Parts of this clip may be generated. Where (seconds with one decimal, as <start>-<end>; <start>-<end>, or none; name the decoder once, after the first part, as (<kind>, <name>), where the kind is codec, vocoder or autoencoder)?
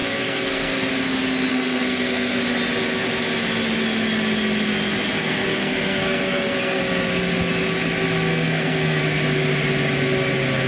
0.0-0.9 (codec, SNAC); 1.5-2.4; 5.2-6.8; 8.3-9.0